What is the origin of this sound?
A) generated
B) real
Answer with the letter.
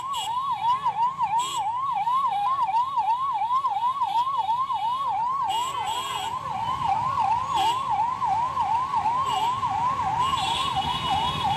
B